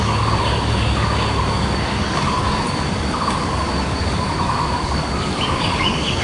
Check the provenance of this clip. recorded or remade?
remade